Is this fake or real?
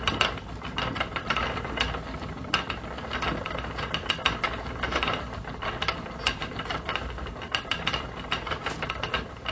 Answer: real